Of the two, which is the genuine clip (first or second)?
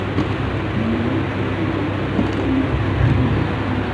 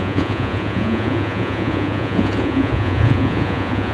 first